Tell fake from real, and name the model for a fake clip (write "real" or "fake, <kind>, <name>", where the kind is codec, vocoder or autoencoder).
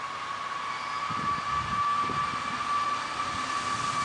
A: real